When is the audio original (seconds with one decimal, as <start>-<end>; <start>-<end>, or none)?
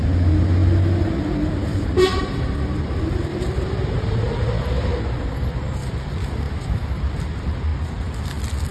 0.0-1.7; 2.4-8.7